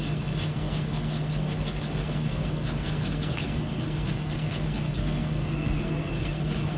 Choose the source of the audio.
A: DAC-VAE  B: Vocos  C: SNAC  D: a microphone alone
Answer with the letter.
C